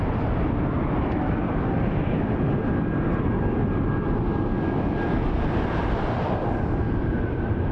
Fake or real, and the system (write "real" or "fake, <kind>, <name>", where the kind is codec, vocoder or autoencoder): real